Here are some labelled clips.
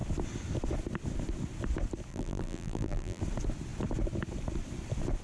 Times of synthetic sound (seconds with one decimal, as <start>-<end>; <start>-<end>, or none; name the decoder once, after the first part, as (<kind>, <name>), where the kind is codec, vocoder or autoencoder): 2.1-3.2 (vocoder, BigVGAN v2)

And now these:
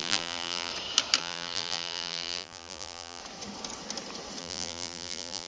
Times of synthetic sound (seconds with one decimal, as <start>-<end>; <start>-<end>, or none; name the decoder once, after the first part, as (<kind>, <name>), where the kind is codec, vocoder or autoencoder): 0.0-0.7 (vocoder, BigVGAN v2); 1.2-3.2; 4.4-5.5

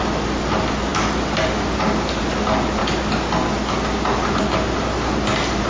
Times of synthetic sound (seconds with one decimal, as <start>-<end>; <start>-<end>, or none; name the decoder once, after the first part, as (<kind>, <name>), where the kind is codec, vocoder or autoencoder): none

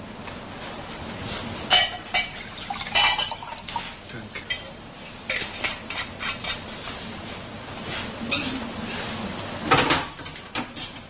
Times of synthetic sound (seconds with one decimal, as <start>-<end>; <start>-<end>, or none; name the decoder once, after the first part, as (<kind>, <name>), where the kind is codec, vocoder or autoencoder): 10.3-11.1 (vocoder, BigVGAN v2)